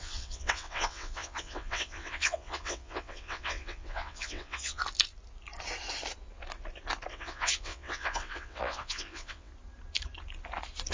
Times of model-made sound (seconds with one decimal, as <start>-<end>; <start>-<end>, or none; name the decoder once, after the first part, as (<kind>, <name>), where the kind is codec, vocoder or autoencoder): 0.0-4.8 (vocoder, WaveNeXt); 7.1-9.5

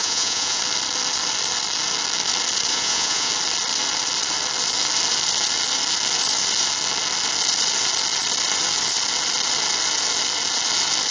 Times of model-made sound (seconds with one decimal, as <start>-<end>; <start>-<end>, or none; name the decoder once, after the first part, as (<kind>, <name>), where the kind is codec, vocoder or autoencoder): 0.0-0.6 (vocoder, Vocos); 2.7-3.3

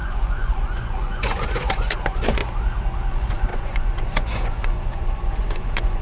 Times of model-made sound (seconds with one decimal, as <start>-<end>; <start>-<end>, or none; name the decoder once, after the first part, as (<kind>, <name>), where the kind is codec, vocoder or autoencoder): 0.0-2.4 (vocoder, Vocos); 3.1-6.0